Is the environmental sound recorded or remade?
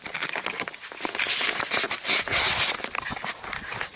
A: recorded